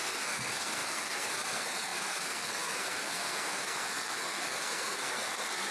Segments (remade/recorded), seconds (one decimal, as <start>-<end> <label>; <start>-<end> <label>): 0.0-5.7 remade